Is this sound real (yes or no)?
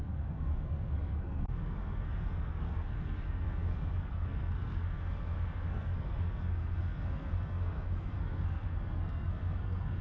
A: no